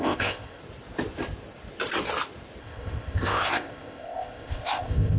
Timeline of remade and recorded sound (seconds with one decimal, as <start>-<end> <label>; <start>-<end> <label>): 0.0-0.6 remade; 0.6-2.6 recorded; 2.6-5.2 remade